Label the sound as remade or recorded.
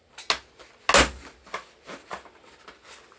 recorded